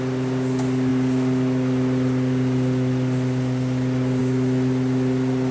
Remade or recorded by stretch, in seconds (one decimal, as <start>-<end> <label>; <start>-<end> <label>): 0.0-5.5 recorded